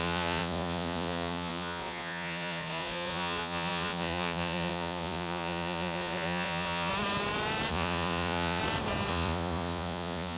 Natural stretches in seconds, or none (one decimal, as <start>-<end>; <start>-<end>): 6.9-7.7; 8.6-9.1

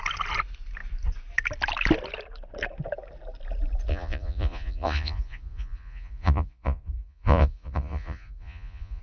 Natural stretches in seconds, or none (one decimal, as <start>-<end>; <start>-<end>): 0.0-3.9